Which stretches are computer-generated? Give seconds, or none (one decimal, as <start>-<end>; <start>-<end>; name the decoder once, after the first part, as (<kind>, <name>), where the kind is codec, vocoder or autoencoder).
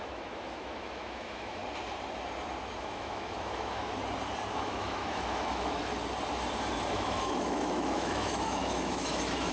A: 0.0-1.6 (autoencoder, DAC-VAE); 2.8-4.0; 4.5-5.8; 6.9-9.5